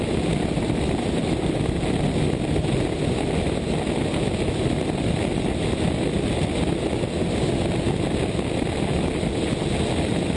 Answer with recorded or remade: recorded